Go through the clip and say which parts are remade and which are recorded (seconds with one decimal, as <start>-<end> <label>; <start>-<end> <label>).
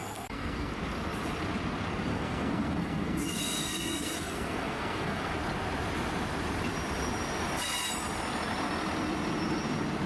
0.0-0.7 remade; 0.7-2.1 recorded; 2.1-5.3 remade; 5.3-10.1 recorded